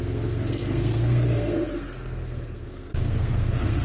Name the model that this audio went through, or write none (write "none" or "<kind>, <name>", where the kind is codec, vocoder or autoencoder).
codec, SNAC